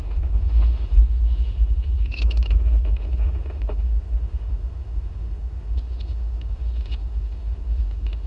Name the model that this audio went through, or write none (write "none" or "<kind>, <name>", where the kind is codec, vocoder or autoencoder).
autoencoder, DAC-VAE